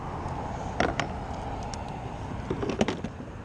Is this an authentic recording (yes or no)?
yes